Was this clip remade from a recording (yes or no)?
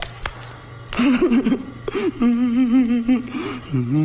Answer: no